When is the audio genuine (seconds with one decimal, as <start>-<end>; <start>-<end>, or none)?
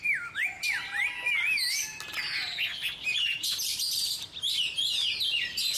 0.0-3.0; 4.9-5.8